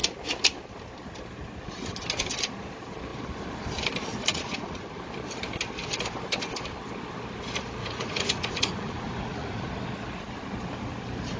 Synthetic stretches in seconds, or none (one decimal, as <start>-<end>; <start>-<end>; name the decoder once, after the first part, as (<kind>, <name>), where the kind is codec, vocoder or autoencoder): 4.3-5.0 (vocoder, Vocos); 7.8-9.7